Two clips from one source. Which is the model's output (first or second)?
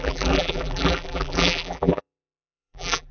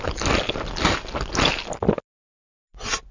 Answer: first